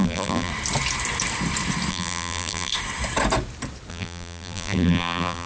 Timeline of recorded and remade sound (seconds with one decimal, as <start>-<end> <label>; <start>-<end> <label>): 0.0-0.5 remade; 0.5-1.9 recorded; 1.9-2.7 remade; 2.7-3.9 recorded; 3.9-5.5 remade